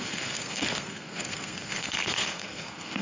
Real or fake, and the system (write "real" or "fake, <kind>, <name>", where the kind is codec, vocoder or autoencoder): fake, codec, SNAC